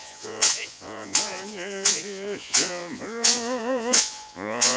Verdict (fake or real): fake